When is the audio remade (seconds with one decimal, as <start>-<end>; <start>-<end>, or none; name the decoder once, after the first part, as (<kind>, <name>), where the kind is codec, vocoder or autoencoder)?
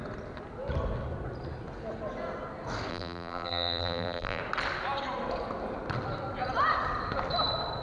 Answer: 2.9-4.4 (vocoder, BigVGAN v2)